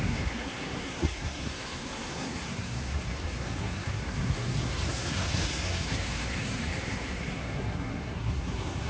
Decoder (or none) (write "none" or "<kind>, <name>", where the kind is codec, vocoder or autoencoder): codec, SNAC